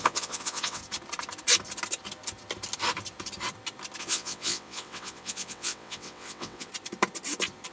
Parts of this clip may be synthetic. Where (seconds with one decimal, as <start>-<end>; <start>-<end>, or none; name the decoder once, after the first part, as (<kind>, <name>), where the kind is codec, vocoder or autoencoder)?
0.0-0.8 (vocoder, WaveNeXt); 4.0-6.7